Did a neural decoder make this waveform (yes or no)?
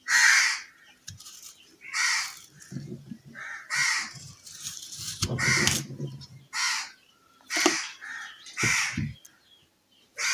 yes